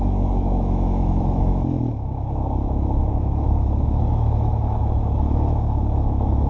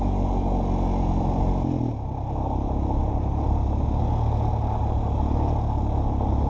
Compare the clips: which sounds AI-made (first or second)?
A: first